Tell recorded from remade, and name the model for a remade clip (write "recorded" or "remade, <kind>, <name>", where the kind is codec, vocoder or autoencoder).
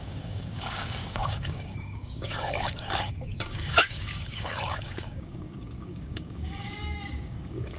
remade, codec, DAC